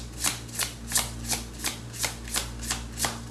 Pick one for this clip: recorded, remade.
recorded